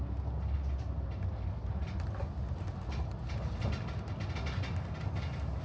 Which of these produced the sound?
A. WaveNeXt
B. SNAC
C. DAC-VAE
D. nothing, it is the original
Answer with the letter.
D